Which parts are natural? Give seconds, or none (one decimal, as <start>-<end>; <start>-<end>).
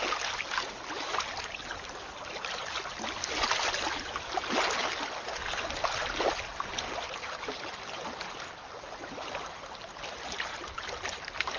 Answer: 0.0-11.6